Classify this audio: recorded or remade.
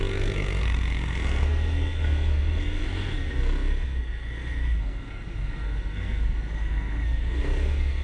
remade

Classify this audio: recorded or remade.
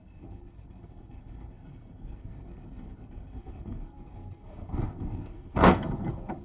remade